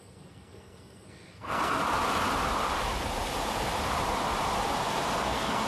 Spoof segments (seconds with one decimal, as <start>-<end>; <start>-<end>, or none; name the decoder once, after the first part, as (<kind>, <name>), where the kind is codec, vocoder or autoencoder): 0.0-1.8 (codec, SNAC); 5.2-5.7